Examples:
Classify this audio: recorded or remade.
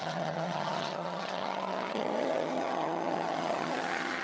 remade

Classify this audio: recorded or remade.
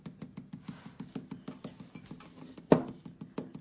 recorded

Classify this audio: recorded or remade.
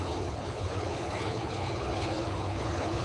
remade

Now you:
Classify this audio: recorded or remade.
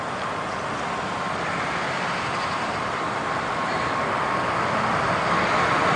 recorded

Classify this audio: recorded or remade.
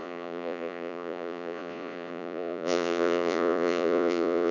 remade